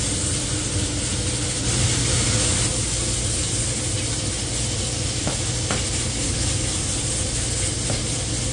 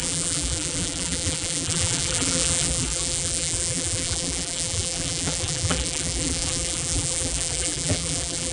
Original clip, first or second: first